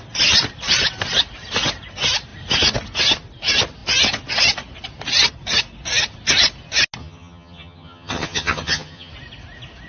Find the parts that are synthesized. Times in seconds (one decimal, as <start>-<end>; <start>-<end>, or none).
7.0-9.1